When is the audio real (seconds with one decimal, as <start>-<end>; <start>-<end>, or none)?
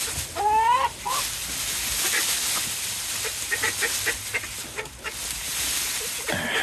0.0-6.6